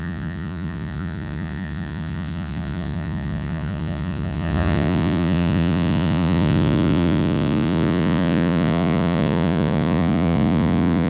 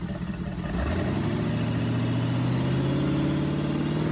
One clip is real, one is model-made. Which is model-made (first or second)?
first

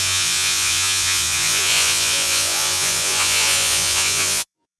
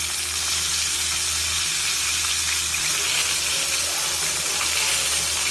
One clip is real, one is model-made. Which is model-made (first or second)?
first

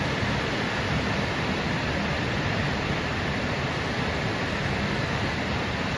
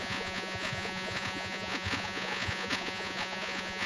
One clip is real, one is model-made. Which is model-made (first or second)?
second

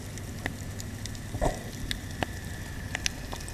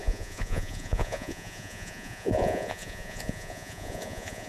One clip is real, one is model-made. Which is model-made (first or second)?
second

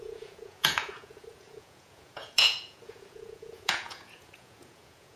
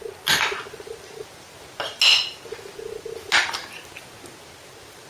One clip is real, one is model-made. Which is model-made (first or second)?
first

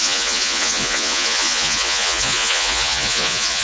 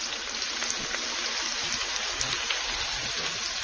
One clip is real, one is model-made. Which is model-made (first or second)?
first